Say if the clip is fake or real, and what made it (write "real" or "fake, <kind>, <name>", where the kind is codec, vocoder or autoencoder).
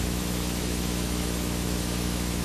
fake, autoencoder, DAC-VAE